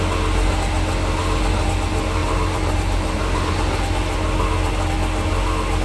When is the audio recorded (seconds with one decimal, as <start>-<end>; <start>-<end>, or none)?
0.0-2.2; 3.5-5.8

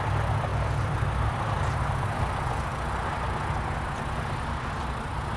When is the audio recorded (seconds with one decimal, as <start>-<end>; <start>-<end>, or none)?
0.0-0.5; 1.9-5.4

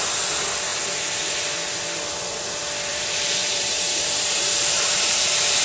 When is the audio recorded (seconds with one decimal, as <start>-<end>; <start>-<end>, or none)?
0.0-2.9

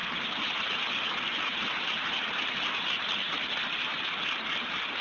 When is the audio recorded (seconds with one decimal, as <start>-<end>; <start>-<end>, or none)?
0.5-5.0